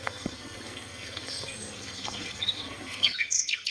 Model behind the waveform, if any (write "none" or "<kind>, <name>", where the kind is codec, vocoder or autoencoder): codec, SNAC